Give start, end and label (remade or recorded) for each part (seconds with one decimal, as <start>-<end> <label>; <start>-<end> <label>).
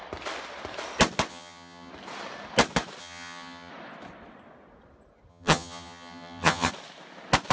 0.0-1.3 recorded; 1.3-1.9 remade; 1.9-3.0 recorded; 3.0-3.7 remade; 3.7-5.3 recorded; 5.3-6.7 remade; 6.7-7.5 recorded